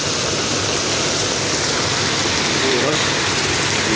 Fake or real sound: real